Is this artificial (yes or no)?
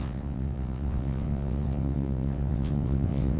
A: yes